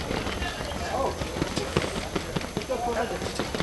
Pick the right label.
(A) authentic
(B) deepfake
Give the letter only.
A